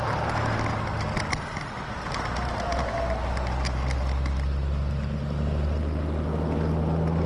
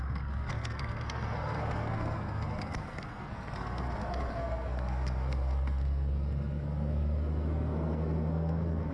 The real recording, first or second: first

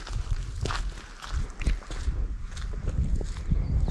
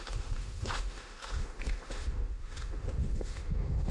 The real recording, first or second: first